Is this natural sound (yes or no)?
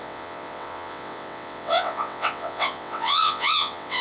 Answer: no